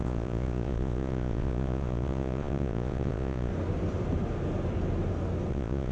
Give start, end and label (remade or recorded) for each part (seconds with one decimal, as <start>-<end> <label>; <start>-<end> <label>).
0.0-3.5 remade; 3.5-5.5 recorded; 5.5-5.9 remade